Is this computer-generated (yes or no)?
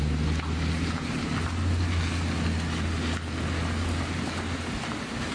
no